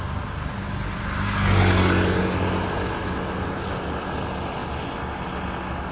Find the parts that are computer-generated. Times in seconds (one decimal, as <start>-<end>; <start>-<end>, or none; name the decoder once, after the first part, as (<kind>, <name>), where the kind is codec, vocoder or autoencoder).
none